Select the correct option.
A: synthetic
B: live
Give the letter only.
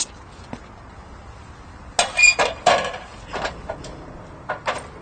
B